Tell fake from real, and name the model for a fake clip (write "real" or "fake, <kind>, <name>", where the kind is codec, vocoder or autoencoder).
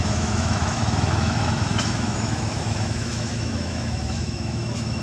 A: fake, autoencoder, DAC-VAE